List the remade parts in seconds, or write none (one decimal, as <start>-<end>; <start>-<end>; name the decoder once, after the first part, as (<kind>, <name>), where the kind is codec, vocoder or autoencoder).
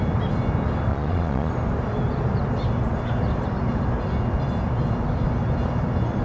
0.9-1.5 (vocoder, Vocos)